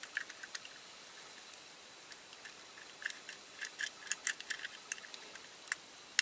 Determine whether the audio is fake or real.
real